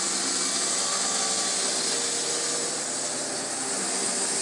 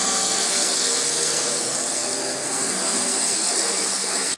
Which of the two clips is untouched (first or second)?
first